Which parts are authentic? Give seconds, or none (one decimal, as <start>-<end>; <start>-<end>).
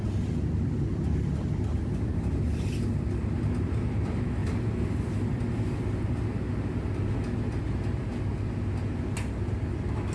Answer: 0.0-1.7; 2.4-10.1